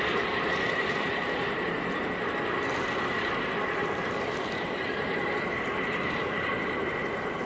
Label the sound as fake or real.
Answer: fake